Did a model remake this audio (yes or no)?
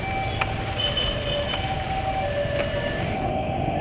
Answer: no